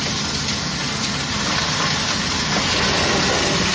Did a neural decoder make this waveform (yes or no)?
no